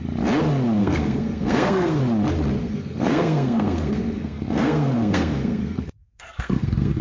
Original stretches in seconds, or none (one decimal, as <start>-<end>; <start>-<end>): 0.0-0.8; 2.0-2.6